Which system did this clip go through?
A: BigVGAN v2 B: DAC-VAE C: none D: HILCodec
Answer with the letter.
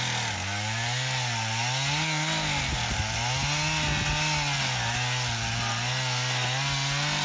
C